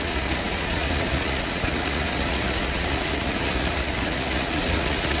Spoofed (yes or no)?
yes